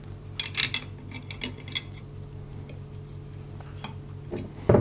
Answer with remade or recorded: recorded